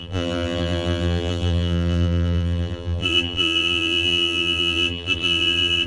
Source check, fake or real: fake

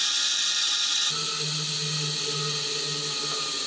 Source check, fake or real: real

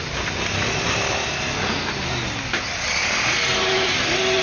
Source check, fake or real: real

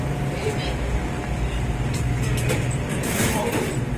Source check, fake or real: fake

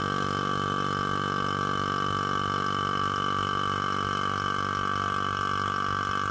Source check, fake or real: real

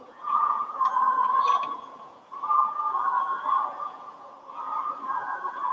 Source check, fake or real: fake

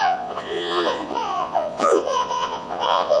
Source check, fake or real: fake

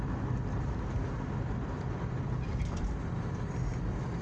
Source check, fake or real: real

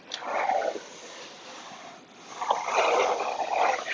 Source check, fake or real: real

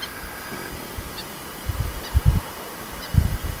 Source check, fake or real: real